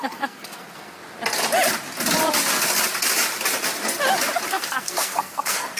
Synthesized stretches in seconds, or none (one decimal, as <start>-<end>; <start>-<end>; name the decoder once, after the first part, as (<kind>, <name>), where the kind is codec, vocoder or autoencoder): 0.0-1.0 (codec, SNAC); 4.5-5.8